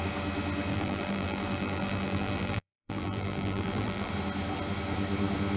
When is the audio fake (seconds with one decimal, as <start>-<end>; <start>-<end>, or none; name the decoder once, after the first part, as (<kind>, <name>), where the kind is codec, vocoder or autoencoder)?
0.7-4.1 (vocoder, BigVGAN v2)

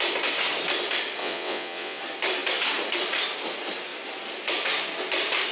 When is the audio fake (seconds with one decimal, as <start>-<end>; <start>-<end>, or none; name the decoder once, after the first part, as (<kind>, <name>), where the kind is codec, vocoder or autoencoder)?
1.2-2.0 (vocoder, WaveNeXt)

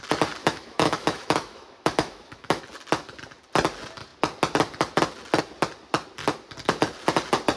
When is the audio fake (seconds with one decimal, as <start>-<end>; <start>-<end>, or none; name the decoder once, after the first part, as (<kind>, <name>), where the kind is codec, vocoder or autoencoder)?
0.4-2.6 (autoencoder, DAC-VAE)

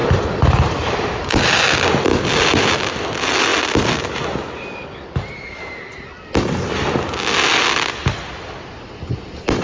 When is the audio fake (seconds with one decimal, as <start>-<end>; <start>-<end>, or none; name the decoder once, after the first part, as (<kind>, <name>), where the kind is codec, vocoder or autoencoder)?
none

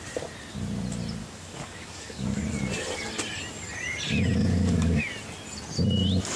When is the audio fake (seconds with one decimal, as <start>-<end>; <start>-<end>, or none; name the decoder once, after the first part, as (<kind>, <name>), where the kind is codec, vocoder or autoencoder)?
1.2-2.4 (codec, DAC); 4.4-5.0

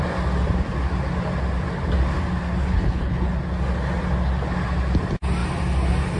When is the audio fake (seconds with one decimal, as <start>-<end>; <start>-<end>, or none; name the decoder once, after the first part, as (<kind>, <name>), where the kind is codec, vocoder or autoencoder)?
2.6-3.3 (codec, HILCodec)

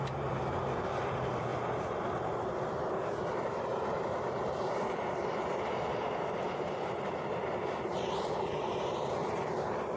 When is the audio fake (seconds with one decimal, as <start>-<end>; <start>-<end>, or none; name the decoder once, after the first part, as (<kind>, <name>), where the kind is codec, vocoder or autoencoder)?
0.0-10.0 (vocoder, BigVGAN v2)

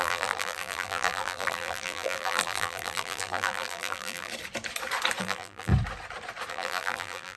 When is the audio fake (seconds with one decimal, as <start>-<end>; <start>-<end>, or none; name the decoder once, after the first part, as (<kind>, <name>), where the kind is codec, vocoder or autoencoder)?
0.0-4.3 (vocoder, BigVGAN v2); 5.2-5.7; 6.5-7.4